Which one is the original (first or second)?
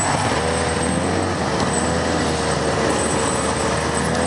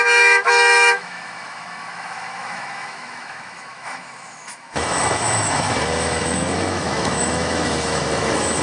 first